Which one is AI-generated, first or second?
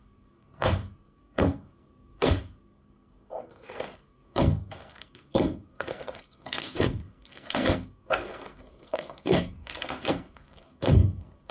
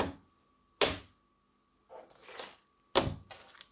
first